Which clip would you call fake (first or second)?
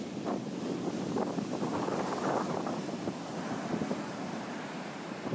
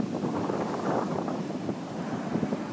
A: second